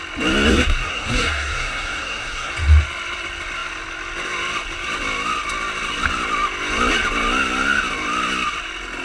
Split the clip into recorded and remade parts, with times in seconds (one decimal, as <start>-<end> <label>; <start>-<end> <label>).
0.0-0.5 recorded; 0.5-2.5 remade; 2.5-9.0 recorded